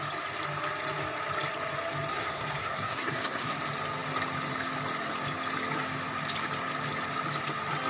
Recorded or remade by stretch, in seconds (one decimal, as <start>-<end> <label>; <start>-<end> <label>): 0.0-2.1 recorded; 2.1-3.6 remade; 3.6-7.9 recorded